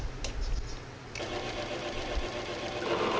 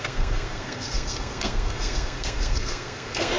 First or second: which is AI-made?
second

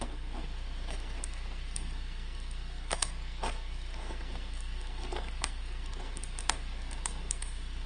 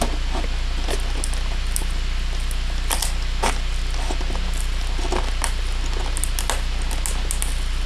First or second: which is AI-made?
first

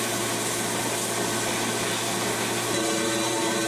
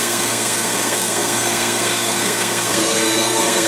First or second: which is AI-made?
second